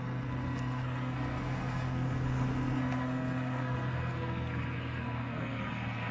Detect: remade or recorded remade